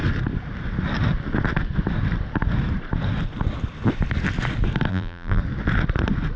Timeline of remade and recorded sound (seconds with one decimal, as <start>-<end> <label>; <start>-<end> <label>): 0.0-4.9 recorded; 4.9-5.4 remade; 5.4-6.4 recorded